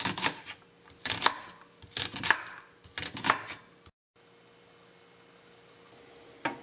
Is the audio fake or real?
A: real